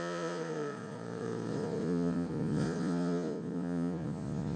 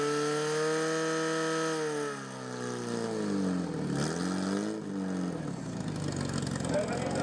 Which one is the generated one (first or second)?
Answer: first